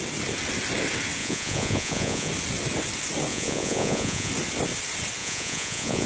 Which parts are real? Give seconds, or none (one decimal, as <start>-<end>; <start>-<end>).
0.0-1.2; 2.3-3.3; 4.3-5.2